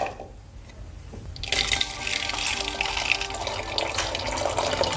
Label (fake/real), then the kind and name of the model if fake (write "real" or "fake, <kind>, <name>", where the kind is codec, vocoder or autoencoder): real